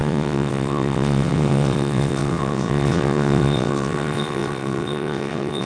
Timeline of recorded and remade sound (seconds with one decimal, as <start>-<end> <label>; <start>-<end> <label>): 0.0-5.6 remade